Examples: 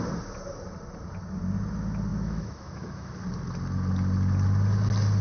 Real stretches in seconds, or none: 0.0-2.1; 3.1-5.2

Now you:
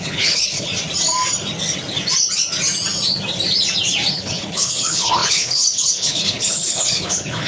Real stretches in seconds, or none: 0.7-4.1

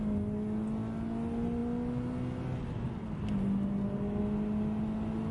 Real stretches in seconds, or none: 0.0-5.3

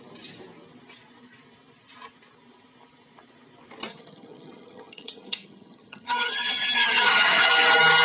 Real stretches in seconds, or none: 0.0-3.9; 7.5-8.0

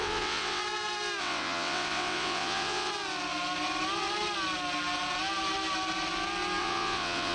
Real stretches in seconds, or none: 0.6-1.2; 2.9-6.6

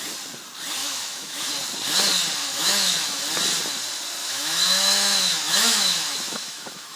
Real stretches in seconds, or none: 0.0-0.8; 1.5-2.4; 3.2-4.2